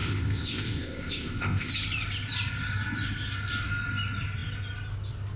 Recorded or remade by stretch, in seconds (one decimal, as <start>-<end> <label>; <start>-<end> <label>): 0.0-1.7 remade; 1.7-5.4 recorded